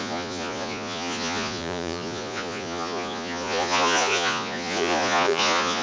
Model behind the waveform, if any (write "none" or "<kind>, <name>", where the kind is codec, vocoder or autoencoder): vocoder, Vocos